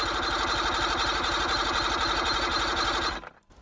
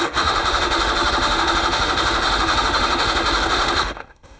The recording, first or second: first